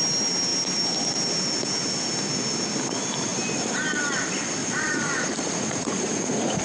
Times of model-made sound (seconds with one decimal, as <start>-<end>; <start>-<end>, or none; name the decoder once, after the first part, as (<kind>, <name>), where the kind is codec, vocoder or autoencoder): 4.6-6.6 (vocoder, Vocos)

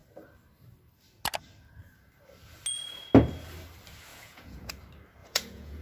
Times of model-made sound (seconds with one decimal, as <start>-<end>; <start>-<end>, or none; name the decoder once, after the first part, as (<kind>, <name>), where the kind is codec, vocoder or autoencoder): 4.1-4.7 (vocoder, Vocos); 5.2-5.8

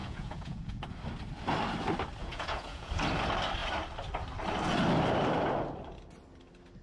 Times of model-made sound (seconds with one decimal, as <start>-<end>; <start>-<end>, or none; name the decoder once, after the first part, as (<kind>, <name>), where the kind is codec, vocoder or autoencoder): 0.0-0.8 (vocoder, Vocos); 2.2-2.9